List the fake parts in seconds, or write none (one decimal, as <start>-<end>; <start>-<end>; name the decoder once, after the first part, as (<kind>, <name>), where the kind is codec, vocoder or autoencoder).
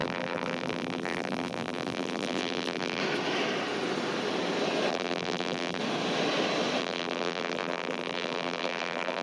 0.0-3.0 (vocoder, BigVGAN v2); 4.9-5.8; 6.8-9.2